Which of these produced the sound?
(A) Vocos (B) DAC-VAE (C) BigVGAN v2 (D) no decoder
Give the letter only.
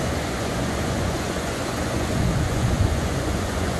A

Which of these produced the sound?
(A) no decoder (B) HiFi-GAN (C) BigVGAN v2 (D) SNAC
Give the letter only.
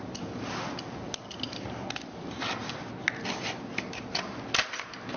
A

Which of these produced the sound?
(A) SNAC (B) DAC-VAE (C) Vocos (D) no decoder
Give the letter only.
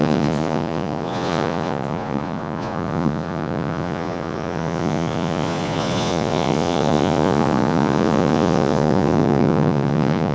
C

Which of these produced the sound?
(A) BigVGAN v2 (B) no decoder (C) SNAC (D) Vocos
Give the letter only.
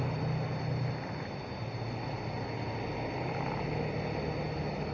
B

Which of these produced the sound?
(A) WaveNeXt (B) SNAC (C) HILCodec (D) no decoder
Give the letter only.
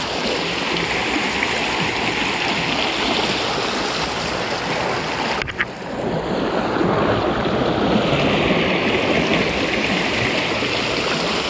D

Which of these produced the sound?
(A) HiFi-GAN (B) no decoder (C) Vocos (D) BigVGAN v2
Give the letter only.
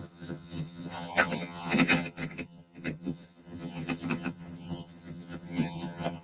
A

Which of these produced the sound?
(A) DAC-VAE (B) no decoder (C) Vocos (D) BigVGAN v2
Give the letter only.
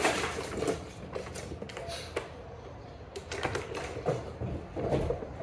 B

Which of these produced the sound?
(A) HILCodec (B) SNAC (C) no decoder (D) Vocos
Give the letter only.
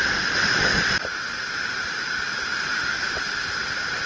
C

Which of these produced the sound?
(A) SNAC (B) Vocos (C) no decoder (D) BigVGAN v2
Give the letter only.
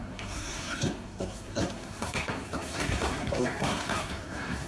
A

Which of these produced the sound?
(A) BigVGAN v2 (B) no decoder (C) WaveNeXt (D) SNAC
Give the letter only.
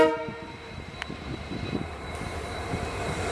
A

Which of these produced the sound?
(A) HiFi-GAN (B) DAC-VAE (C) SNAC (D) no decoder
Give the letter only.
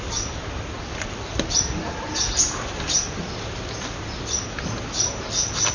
D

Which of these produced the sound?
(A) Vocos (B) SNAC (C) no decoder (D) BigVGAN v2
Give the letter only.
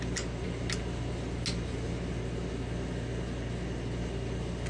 C